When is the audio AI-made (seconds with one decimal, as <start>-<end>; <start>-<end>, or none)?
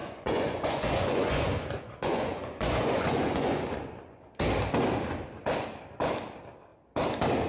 0.0-4.4